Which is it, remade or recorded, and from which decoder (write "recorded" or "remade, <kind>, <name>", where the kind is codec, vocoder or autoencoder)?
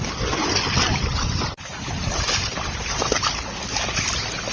remade, vocoder, BigVGAN v2